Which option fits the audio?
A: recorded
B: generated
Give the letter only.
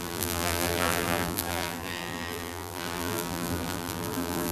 B